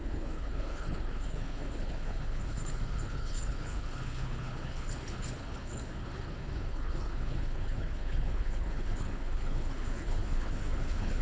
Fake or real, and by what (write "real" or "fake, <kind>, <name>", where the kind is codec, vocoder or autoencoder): fake, codec, HILCodec